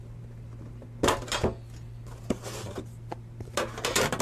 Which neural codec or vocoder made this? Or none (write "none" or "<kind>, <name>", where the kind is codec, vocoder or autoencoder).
none